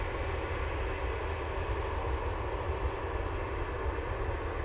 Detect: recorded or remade recorded